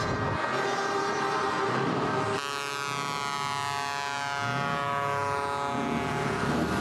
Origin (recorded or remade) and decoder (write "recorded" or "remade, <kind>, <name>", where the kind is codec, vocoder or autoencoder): recorded